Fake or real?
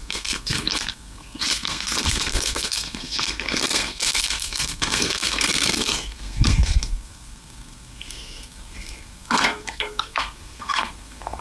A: fake